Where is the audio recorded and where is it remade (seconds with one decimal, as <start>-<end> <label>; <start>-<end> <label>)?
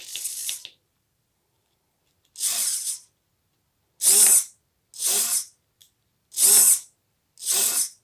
0.0-0.4 recorded; 0.4-2.0 remade; 2.0-8.0 recorded